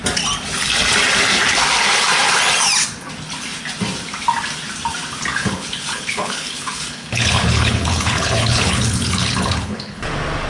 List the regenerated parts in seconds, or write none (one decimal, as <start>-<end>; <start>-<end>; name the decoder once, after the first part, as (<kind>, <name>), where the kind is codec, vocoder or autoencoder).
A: 5.3-10.1 (codec, HILCodec)